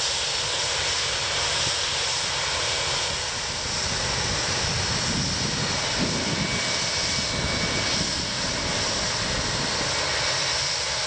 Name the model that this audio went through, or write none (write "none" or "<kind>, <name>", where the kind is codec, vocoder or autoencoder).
none